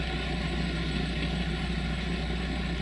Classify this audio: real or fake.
real